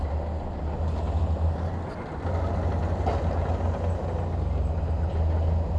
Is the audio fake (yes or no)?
no